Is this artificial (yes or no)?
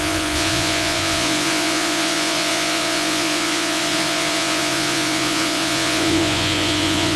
yes